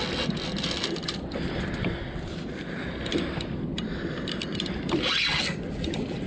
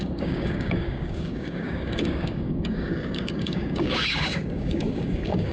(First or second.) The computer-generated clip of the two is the second